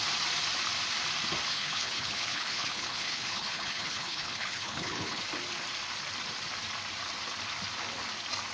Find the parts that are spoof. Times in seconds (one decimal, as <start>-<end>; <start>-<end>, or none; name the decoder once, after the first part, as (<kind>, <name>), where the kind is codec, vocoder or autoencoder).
1.5-5.2 (codec, HILCodec)